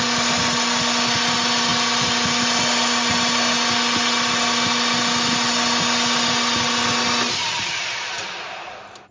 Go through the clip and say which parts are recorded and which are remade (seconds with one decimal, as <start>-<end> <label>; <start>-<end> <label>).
0.0-9.1 recorded